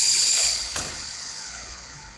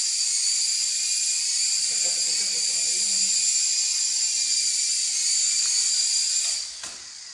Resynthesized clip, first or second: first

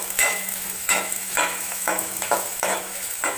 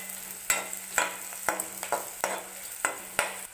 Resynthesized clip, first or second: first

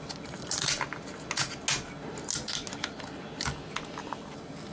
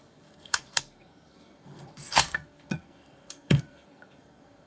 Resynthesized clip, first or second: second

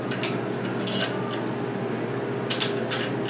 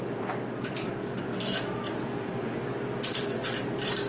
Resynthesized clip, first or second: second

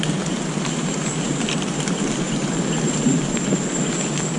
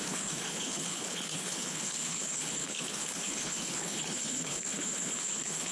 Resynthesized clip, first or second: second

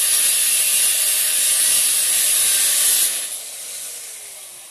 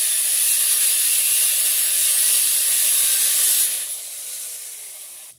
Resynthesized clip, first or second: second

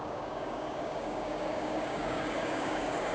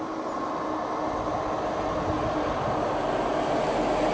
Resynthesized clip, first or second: first